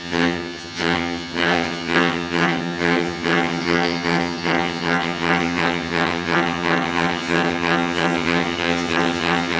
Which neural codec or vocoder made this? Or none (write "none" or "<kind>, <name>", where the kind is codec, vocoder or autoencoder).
vocoder, HiFi-GAN